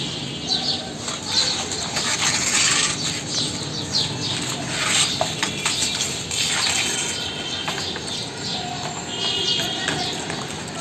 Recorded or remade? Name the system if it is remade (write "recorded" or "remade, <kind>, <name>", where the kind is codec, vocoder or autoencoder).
recorded